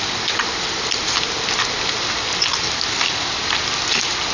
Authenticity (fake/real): real